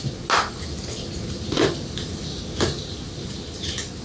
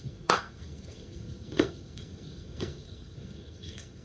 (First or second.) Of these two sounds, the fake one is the second